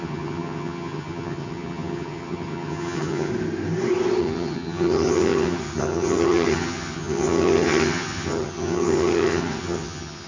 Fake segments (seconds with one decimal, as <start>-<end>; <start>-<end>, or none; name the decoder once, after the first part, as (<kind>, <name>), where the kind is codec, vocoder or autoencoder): 0.0-3.3 (vocoder, HiFi-GAN); 4.2-10.3